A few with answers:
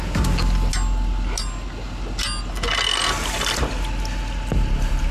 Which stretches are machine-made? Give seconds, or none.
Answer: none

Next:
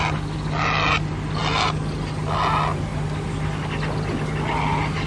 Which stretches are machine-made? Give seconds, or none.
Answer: none

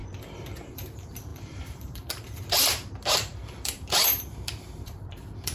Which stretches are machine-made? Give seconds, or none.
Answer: 0.7-5.5 (vocoder, BigVGAN v2)